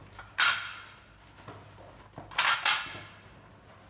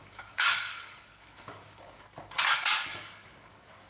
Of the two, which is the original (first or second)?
first